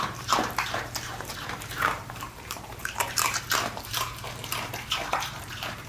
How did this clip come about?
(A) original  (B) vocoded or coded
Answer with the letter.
B